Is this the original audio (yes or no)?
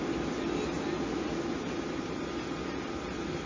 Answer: yes